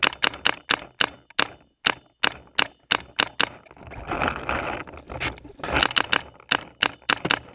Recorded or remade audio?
recorded